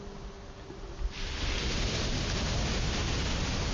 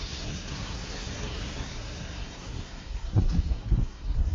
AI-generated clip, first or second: second